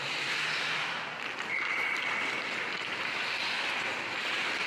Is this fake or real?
real